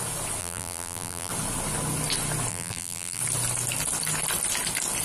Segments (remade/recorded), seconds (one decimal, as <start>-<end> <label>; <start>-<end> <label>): 0.0-0.4 recorded; 0.4-1.3 remade; 1.3-2.5 recorded; 2.5-3.2 remade; 3.2-5.0 recorded